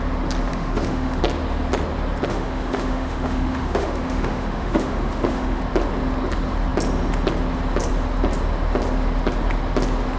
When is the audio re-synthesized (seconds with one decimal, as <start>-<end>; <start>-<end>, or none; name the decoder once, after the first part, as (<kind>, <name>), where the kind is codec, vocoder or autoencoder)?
0.5-1.2 (autoencoder, DAC-VAE); 2.3-5.6